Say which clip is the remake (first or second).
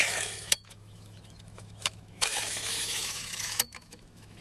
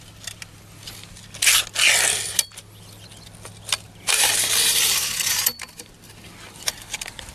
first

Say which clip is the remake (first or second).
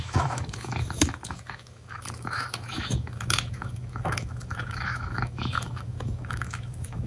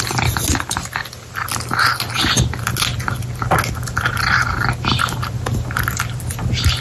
first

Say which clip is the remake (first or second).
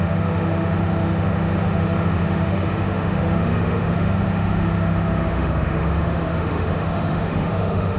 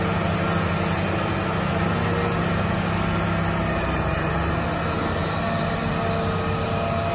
first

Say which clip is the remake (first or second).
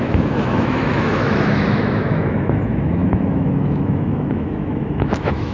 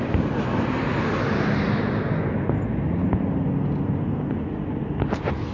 first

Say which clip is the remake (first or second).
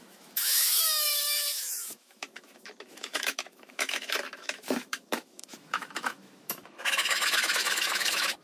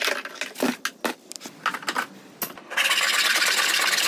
first